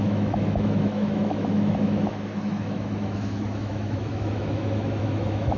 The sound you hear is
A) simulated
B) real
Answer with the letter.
A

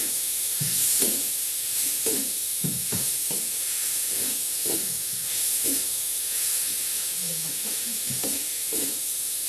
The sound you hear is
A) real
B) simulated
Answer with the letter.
B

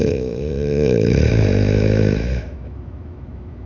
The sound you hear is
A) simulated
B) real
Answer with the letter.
A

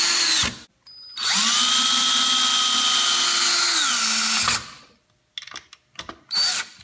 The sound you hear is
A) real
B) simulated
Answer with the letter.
A